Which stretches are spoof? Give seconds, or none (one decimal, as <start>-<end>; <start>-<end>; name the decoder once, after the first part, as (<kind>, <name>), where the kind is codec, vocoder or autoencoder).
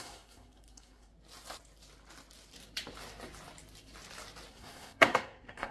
0.0-1.1 (codec, SNAC); 4.5-5.7